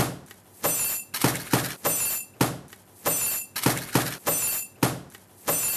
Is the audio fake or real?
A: real